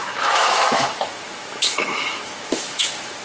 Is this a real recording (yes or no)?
no